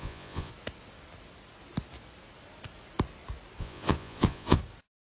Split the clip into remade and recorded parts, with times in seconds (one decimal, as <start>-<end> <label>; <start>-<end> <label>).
0.0-0.5 remade; 0.5-3.6 recorded; 3.6-4.6 remade; 4.6-5.2 recorded